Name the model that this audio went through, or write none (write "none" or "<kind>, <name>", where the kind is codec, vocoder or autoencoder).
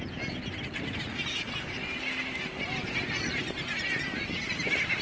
none